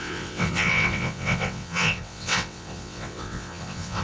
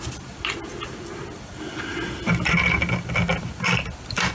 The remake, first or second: first